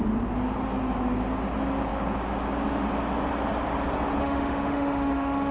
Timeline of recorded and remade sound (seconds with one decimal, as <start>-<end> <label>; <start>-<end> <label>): 0.0-4.2 recorded; 4.2-5.5 remade